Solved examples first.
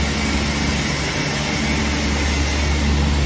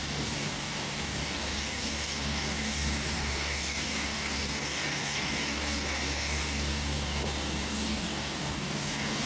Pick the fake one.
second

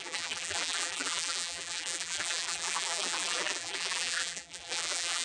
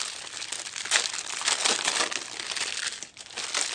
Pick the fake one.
first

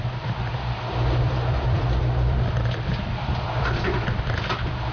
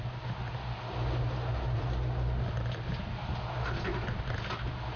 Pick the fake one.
first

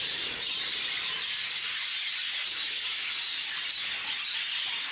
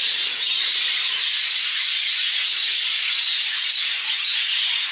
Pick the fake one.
second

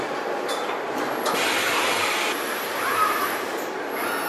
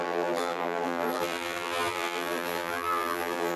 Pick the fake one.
second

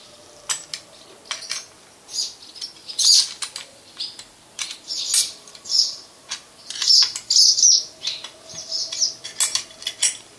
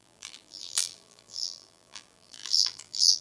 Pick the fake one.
second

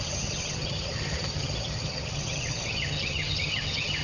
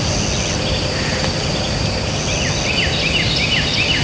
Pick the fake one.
first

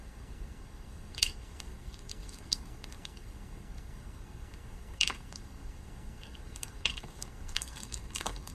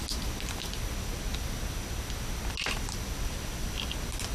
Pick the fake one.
first